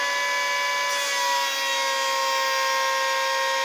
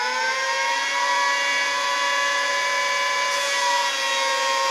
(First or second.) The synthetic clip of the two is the second